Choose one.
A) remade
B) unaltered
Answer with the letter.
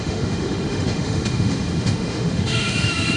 A